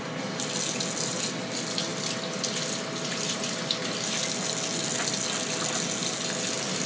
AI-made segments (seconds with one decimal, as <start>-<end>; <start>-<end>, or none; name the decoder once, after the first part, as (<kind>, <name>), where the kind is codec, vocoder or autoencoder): none